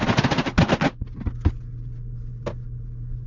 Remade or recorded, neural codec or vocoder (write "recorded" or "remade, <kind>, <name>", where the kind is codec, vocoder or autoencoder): recorded